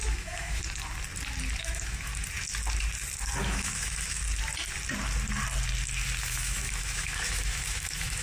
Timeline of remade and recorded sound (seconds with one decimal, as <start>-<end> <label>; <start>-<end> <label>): 0.0-0.6 remade; 0.6-1.6 recorded; 1.6-2.1 remade; 2.1-3.4 recorded; 3.4-4.2 remade; 4.2-6.2 recorded; 6.2-8.2 remade